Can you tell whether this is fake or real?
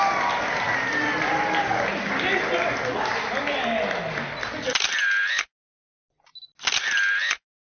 real